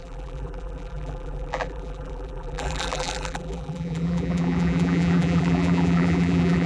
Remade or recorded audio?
remade